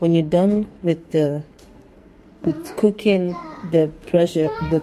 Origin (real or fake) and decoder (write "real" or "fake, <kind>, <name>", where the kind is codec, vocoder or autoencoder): fake, codec, SNAC